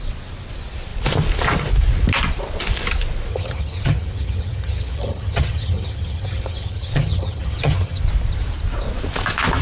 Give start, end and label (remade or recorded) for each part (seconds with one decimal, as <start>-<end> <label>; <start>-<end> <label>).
0.0-3.3 recorded; 3.3-8.0 remade; 8.0-9.6 recorded